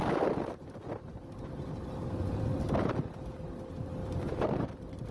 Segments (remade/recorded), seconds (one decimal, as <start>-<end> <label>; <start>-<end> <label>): 0.0-4.0 recorded; 4.0-5.1 remade